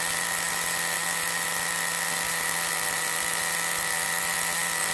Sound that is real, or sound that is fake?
real